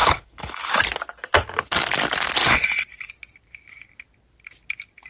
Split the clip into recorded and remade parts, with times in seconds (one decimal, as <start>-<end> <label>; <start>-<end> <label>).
0.0-0.8 remade; 0.8-2.4 recorded; 2.4-3.1 remade; 3.1-5.1 recorded